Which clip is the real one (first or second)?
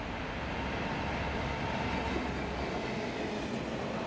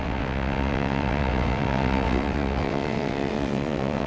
first